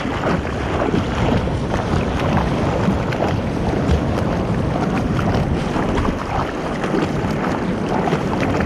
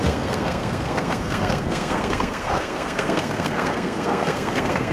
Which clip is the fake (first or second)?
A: second